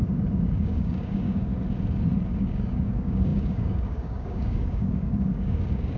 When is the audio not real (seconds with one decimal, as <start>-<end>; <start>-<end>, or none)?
0.0-1.5; 2.4-6.0